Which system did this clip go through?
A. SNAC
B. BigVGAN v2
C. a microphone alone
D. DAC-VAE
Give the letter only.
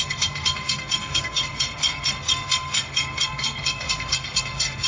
A